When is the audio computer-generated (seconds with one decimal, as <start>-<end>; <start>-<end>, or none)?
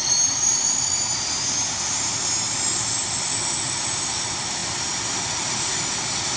none